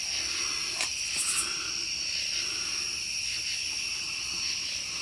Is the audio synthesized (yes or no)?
no